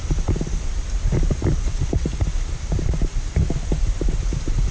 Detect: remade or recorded recorded